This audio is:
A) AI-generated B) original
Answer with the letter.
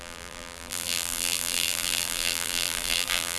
A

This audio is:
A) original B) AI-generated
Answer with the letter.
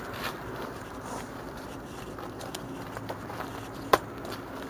B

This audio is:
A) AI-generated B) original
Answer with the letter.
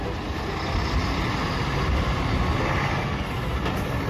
B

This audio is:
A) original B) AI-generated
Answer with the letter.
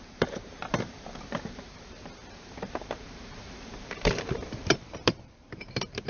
B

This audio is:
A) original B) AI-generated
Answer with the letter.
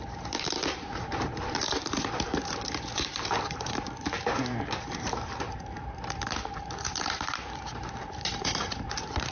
B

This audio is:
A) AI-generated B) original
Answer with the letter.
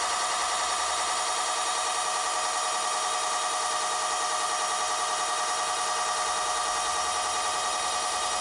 B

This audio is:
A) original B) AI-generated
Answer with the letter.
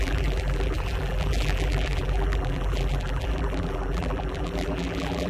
B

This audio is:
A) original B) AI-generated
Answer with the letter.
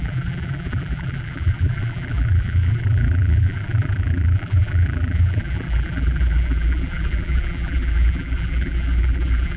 B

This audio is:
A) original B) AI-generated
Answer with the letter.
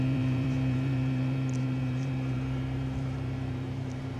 B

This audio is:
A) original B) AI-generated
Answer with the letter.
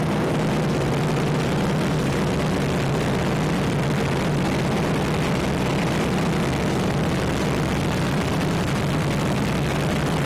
A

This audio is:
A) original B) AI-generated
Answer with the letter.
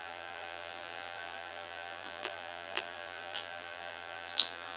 B